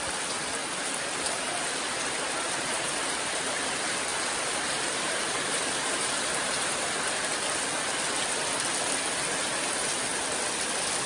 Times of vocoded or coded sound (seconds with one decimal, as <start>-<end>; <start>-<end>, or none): 0.6-3.6; 4.1-6.9